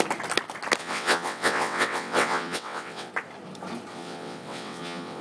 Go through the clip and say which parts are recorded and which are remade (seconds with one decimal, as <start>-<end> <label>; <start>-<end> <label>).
0.0-0.8 recorded; 0.8-3.1 remade; 3.1-3.9 recorded; 3.9-5.2 remade